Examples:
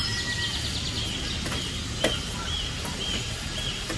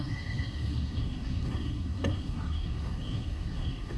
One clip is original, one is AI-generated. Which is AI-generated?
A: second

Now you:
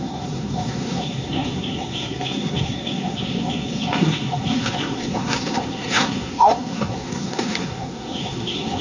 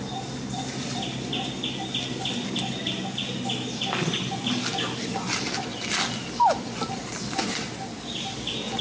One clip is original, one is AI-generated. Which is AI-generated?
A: first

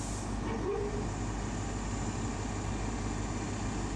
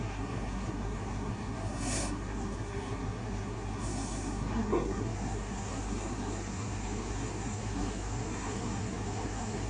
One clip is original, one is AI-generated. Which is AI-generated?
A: second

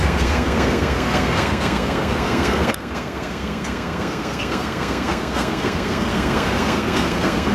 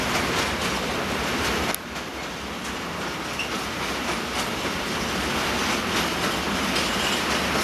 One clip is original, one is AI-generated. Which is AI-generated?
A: first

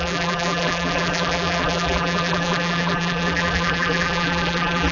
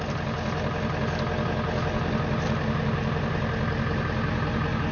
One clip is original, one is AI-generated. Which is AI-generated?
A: first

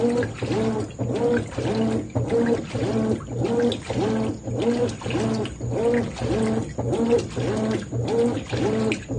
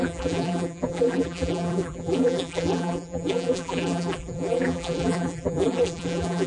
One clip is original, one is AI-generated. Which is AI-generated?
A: second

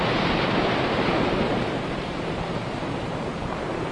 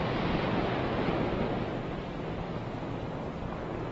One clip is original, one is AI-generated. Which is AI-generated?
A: first